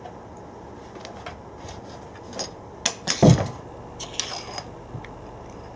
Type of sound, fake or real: real